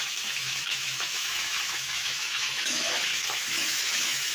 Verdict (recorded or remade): remade